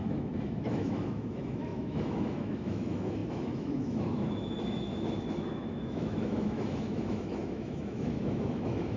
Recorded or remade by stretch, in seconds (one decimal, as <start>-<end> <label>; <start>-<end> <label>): 0.0-9.0 remade